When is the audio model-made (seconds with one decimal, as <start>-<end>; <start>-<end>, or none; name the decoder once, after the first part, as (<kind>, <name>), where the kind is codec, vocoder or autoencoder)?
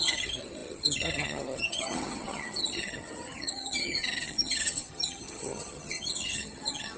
0.0-7.0 (vocoder, HiFi-GAN)